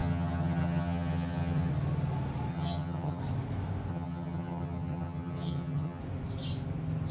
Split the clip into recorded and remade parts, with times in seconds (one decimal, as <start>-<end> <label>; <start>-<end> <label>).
0.0-1.7 remade; 1.7-2.5 recorded; 2.5-3.2 remade; 3.2-3.9 recorded; 3.9-6.0 remade; 6.0-7.1 recorded